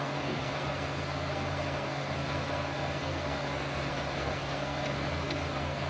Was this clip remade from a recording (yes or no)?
yes